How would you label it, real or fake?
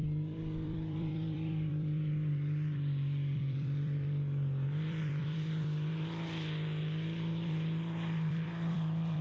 fake